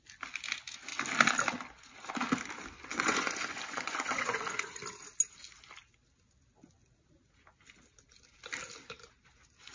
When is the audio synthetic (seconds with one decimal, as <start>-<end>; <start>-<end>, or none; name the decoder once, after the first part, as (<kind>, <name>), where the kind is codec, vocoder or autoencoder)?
2.9-4.8 (vocoder, Vocos)